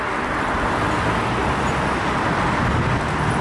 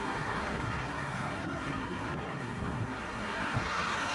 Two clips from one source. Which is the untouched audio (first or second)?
first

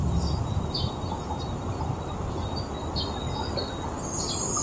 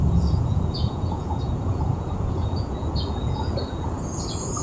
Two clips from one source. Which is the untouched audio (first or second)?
first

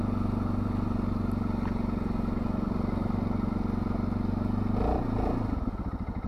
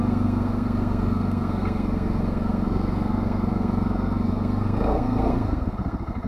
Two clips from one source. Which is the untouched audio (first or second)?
first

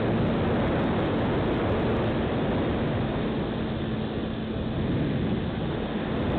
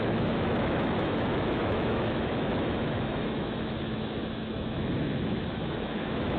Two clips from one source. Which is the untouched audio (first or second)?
first